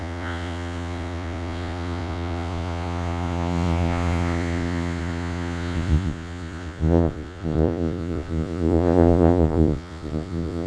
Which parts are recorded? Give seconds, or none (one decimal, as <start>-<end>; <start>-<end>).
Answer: none